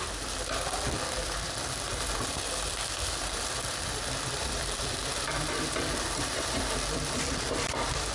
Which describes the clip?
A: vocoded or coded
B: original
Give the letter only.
A